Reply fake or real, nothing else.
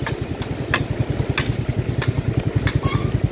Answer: real